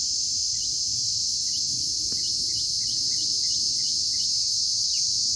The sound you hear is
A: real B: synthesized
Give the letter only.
A